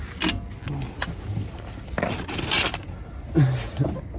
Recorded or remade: recorded